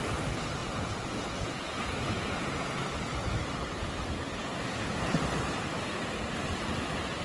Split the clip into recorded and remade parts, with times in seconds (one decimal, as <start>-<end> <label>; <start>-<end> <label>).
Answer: 0.0-0.6 recorded; 0.6-2.7 remade; 2.7-4.4 recorded; 4.4-5.2 remade; 5.2-7.2 recorded